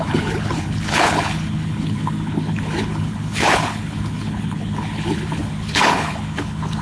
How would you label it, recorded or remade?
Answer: remade